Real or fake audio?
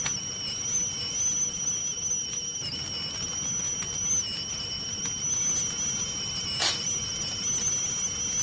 real